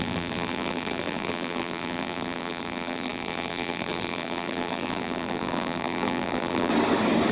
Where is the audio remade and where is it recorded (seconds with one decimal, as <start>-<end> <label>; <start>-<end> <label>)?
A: 0.0-6.7 remade; 6.7-7.3 recorded